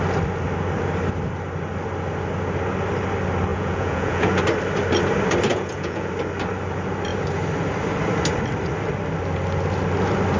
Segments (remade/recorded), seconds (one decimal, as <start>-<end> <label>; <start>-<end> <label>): 0.0-3.5 recorded; 3.5-4.4 remade; 4.4-5.5 recorded; 5.5-6.1 remade; 6.1-10.4 recorded